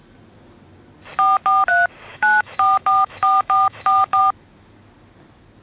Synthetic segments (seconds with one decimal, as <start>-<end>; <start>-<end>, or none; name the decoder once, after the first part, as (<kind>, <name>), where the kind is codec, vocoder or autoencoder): 2.1-4.2 (autoencoder, DAC-VAE)